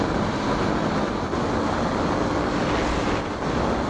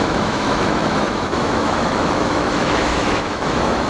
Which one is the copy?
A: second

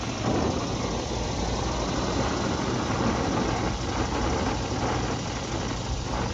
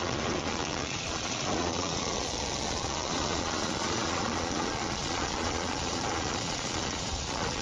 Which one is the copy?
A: second